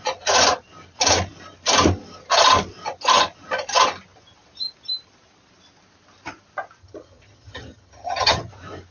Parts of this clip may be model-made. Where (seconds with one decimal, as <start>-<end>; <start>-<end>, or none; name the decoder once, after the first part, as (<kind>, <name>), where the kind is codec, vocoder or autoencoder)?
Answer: 6.8-8.5 (vocoder, HiFi-GAN)